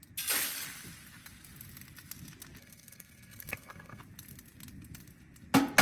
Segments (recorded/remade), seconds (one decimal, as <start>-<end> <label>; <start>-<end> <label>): 0.0-2.6 recorded; 2.6-4.0 remade; 4.0-5.8 recorded